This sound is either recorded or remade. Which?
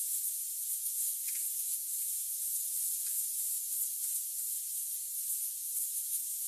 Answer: recorded